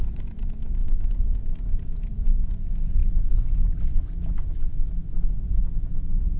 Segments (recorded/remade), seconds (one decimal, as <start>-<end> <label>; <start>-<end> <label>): 0.0-0.8 recorded; 0.8-1.4 remade; 1.4-6.4 recorded